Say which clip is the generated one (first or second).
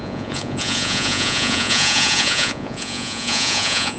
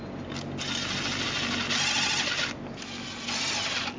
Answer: first